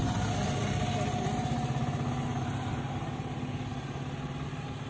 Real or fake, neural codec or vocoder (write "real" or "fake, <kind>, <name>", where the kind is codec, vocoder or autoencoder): real